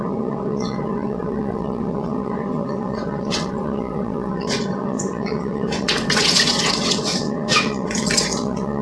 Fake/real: fake